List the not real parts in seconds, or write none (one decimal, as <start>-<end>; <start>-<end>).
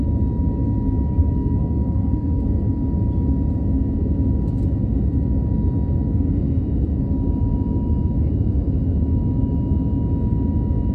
1.2-2.4